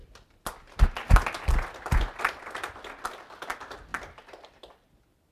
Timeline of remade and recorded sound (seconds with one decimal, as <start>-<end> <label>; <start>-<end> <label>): 0.0-5.3 recorded